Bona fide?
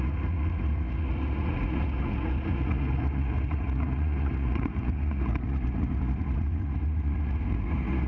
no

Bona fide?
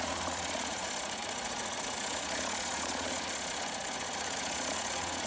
no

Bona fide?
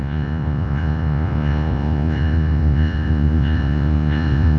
no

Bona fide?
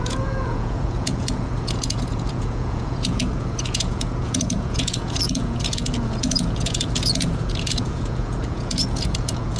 no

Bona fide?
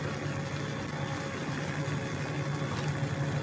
yes